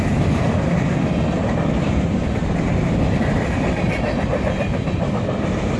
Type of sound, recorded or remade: remade